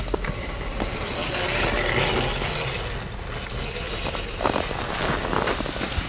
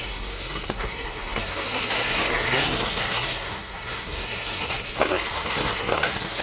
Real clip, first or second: first